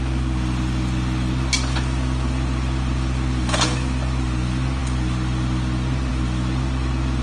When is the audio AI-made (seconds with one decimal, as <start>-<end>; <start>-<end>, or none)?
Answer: none